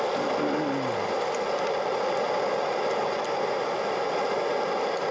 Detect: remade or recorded recorded